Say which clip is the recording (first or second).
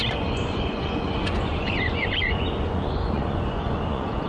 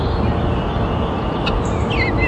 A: second